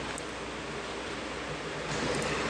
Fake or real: real